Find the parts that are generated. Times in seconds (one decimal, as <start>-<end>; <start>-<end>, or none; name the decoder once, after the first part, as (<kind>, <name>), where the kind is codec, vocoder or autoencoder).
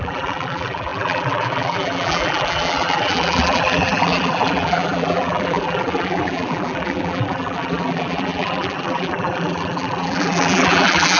0.0-11.2 (vocoder, BigVGAN v2)